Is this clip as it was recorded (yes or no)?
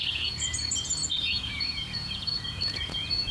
no